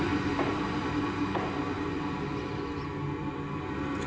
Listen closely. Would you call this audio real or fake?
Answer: real